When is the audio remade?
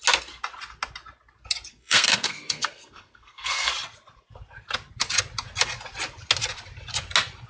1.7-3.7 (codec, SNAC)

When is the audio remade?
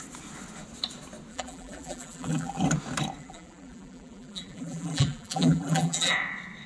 1.3-2.6 (vocoder, BigVGAN v2); 3.2-6.1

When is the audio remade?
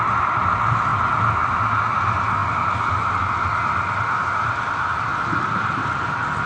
none